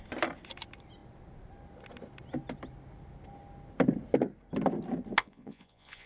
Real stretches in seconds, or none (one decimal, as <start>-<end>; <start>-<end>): 0.0-5.2